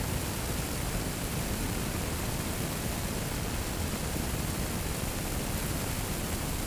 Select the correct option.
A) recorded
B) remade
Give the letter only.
A